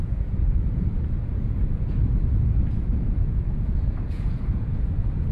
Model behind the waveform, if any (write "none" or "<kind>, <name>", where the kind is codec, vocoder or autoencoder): vocoder, Vocos